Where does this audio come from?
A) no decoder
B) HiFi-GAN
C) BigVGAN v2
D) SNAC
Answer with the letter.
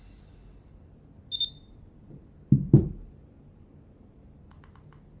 A